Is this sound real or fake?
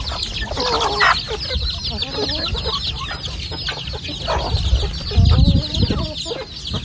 real